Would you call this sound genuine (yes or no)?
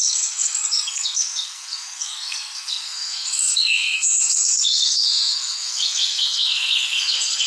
no